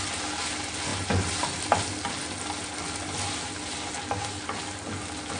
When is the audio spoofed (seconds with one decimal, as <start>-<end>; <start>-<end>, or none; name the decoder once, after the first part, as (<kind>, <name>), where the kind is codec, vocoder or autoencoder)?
none